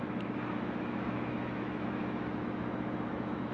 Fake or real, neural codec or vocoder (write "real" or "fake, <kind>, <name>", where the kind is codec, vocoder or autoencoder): fake, autoencoder, DAC-VAE